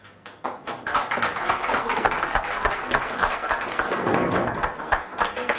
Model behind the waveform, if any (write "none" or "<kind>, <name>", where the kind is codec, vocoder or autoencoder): codec, SNAC